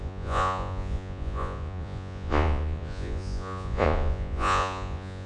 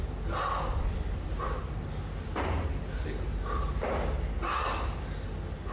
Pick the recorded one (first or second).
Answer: second